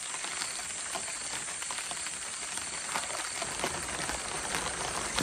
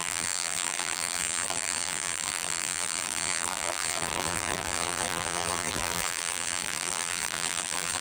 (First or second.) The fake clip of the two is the second